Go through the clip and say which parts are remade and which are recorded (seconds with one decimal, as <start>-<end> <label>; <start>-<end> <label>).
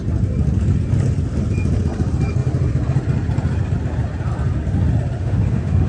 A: 0.0-5.2 recorded; 5.2-5.9 remade